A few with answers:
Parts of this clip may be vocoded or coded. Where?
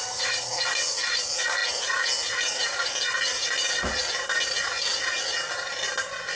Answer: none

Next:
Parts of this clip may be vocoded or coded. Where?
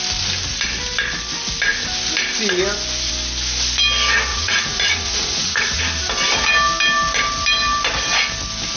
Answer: 4.3-5.8 (vocoder, Vocos)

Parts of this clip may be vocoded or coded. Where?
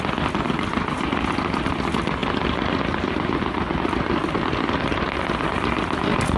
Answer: none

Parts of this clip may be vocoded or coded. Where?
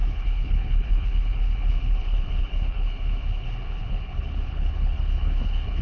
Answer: 0.0-5.8 (codec, HILCodec)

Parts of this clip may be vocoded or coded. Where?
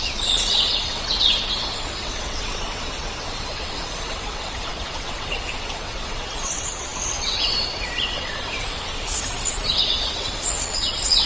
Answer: 0.0-11.3 (vocoder, WaveNeXt)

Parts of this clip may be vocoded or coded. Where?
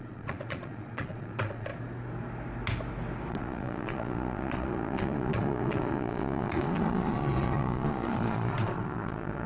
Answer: 0.0-1.7 (vocoder, Vocos); 3.3-9.5